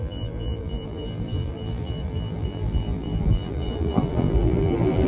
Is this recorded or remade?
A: remade